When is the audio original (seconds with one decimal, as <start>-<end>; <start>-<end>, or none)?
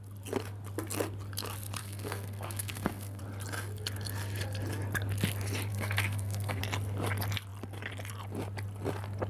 0.0-1.8; 3.2-5.7; 6.6-9.3